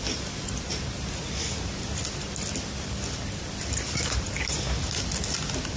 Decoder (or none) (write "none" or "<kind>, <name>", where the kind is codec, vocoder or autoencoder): none